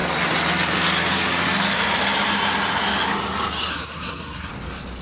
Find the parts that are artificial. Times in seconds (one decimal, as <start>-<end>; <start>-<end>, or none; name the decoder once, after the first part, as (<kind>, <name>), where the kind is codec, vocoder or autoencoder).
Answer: 3.7-4.5 (codec, SNAC)